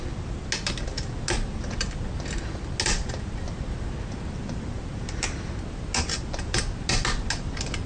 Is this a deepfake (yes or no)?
no